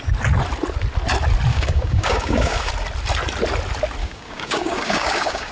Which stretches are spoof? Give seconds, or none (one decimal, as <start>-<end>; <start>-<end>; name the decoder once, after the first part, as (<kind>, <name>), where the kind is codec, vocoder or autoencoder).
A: 1.5-2.7 (codec, DAC); 4.0-5.5